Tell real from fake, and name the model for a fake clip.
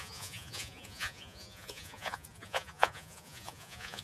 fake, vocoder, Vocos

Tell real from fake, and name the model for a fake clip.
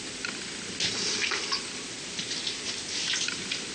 real